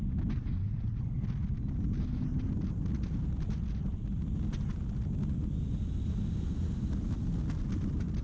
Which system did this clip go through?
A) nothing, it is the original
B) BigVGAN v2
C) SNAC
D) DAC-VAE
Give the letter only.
A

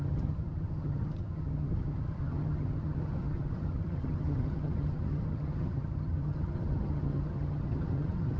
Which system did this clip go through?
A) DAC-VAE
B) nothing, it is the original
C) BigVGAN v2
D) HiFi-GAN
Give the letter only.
D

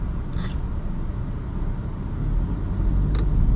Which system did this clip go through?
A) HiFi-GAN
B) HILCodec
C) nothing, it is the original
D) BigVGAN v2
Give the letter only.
C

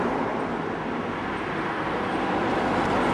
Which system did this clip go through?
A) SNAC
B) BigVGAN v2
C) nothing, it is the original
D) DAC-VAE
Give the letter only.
C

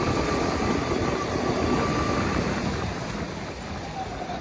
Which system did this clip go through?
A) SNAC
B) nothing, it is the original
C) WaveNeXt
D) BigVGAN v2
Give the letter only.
B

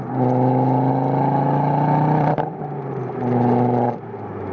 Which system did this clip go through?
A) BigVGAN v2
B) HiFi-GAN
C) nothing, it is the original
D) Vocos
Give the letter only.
C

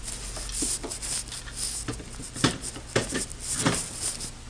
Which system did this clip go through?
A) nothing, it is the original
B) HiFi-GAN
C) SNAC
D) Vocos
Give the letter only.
A